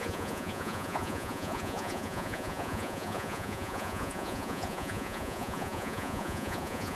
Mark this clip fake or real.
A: fake